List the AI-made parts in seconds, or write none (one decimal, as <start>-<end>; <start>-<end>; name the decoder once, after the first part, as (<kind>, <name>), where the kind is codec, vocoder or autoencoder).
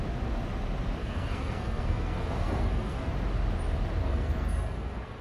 1.0-3.1 (codec, SNAC); 4.0-5.2